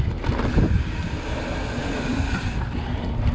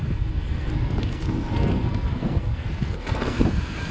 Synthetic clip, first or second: second